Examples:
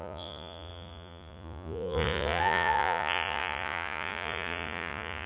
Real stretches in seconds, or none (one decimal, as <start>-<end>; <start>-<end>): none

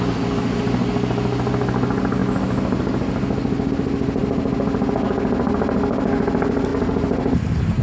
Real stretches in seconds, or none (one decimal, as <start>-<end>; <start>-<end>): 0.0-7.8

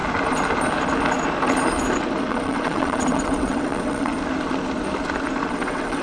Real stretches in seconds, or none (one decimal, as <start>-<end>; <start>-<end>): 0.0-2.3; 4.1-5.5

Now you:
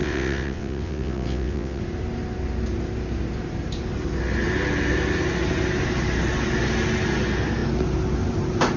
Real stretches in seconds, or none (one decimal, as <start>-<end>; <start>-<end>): 1.8-8.8